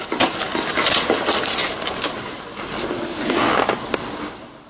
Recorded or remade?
recorded